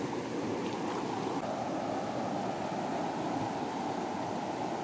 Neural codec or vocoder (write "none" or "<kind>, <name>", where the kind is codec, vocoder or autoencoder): none